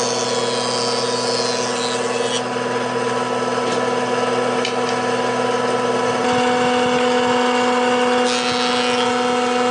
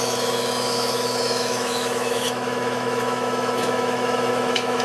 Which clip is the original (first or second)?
first